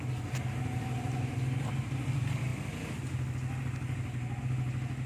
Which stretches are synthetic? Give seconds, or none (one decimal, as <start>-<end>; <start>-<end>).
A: none